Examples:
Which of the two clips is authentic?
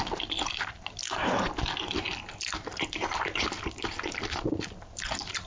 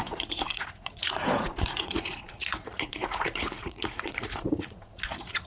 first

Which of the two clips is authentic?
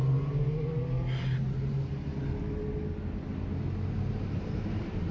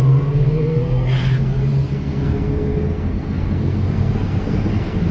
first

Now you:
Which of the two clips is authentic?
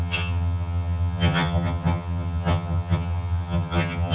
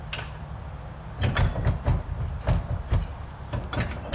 second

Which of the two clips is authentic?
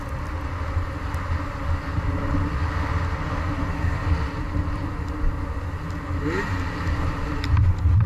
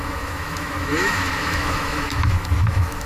first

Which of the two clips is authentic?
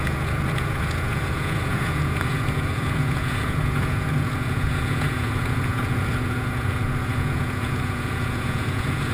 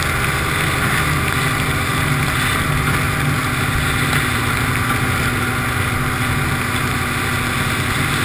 second